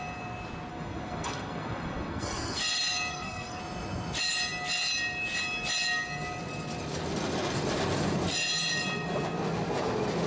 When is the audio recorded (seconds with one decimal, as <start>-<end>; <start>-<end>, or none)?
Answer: 0.0-0.7; 2.6-3.1; 3.6-10.3